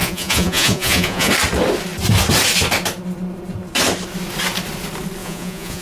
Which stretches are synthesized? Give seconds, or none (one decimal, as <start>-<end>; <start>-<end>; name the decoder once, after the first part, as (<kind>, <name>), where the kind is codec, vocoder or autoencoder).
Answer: 0.0-1.3 (vocoder, Vocos); 5.2-5.8